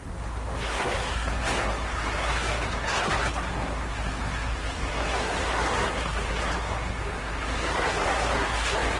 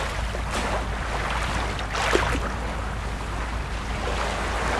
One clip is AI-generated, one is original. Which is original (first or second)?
second